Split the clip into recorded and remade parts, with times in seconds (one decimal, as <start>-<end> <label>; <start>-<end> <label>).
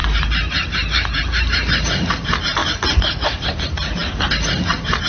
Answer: 0.0-2.1 remade; 2.1-2.6 recorded; 2.6-3.6 remade; 3.6-5.1 recorded